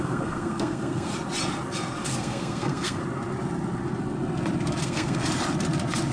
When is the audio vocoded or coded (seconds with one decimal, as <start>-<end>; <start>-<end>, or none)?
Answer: 0.0-1.1; 2.2-3.0; 4.8-5.2